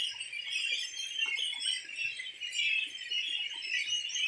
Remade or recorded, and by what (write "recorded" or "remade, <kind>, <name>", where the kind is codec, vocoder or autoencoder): recorded